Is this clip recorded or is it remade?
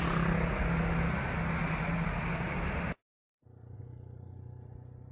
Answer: recorded